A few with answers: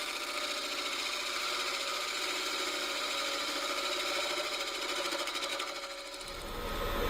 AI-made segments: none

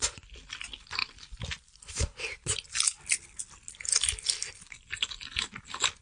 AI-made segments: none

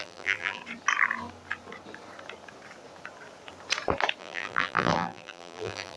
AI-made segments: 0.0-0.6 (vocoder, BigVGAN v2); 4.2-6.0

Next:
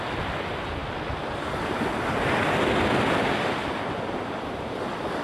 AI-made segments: none

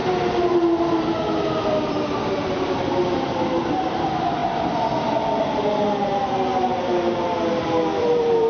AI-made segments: 1.9-3.0 (vocoder, BigVGAN v2); 3.6-4.4; 8.0-8.5

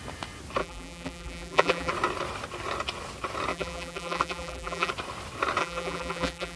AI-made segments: 0.6-1.9 (vocoder, BigVGAN v2); 3.5-4.9; 5.6-6.6

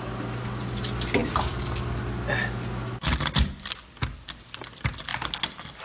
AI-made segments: 1.2-2.0 (vocoder, BigVGAN v2)

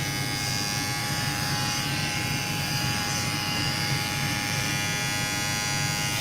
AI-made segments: 1.0-4.7 (vocoder, BigVGAN v2)